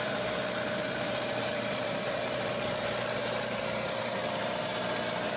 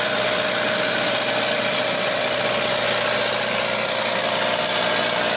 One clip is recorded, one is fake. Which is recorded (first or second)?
second